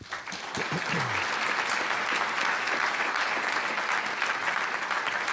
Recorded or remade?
recorded